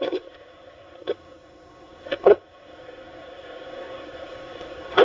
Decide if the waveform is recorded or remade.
remade